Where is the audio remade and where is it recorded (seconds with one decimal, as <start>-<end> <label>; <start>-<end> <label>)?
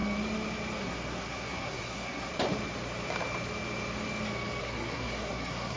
0.0-0.8 recorded; 0.8-2.3 remade; 2.3-4.6 recorded; 4.6-5.8 remade